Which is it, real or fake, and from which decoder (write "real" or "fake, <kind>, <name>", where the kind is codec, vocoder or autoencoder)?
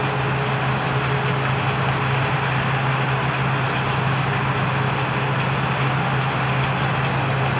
real